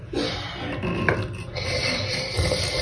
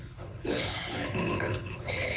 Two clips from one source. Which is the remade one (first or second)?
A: second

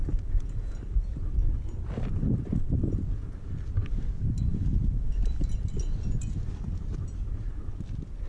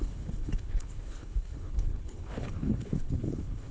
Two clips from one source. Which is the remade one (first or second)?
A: second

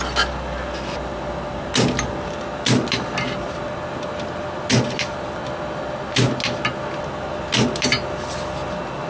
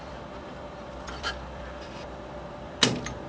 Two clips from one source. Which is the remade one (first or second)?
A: second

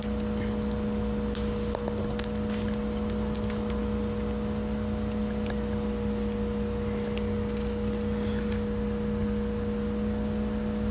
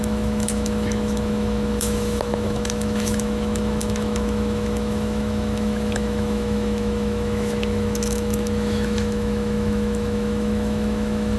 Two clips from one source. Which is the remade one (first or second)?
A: second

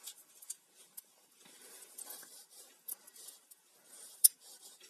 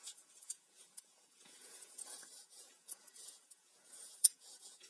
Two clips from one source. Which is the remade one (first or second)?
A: second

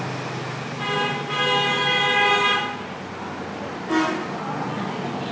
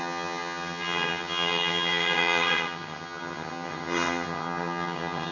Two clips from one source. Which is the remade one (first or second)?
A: second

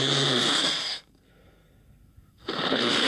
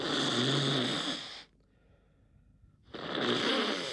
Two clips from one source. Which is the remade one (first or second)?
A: first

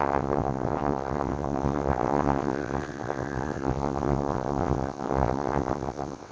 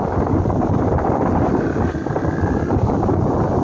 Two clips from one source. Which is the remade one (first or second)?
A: first